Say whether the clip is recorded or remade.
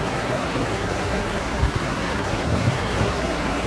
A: remade